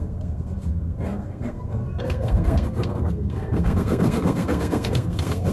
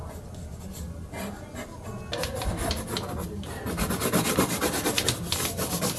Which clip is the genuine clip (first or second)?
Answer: second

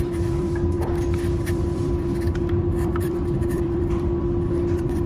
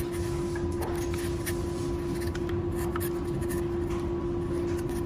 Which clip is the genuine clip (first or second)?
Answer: second